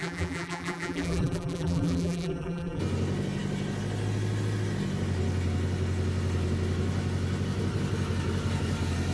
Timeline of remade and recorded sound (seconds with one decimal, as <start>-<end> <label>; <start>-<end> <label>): 0.0-2.8 remade; 2.8-9.1 recorded